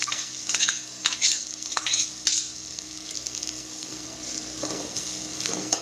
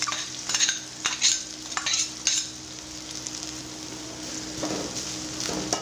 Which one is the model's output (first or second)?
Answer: first